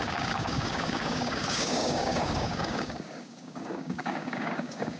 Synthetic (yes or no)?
yes